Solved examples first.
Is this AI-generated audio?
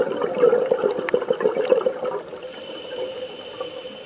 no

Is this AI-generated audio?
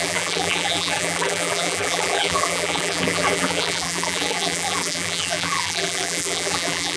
yes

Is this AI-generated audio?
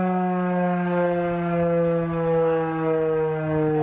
no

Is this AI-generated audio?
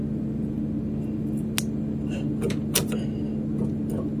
no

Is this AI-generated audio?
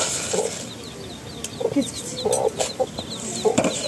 no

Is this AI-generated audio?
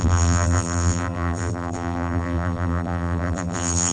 yes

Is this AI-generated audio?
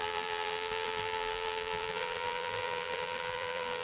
yes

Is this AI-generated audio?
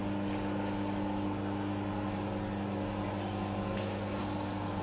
no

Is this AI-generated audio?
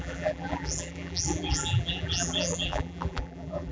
yes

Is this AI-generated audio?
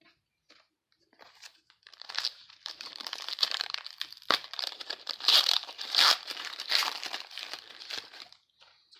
yes